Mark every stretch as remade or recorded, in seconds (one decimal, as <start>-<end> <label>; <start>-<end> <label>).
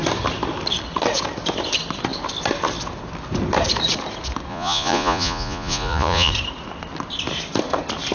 0.0-4.5 recorded; 4.5-6.3 remade; 6.3-8.1 recorded